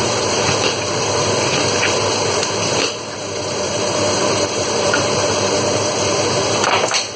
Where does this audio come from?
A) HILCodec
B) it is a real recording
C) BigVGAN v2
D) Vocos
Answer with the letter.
C